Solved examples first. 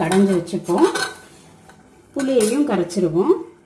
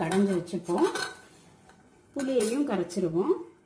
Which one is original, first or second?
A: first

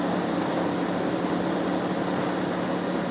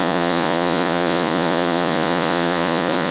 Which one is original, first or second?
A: first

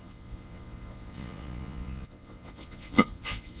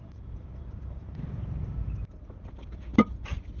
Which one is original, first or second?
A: second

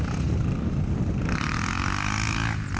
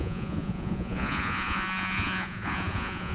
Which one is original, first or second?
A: first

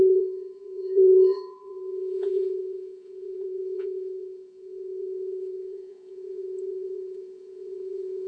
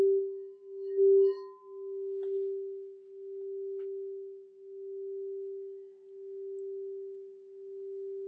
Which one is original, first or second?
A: second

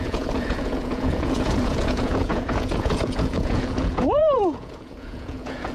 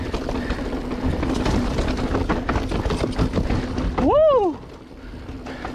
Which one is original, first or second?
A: second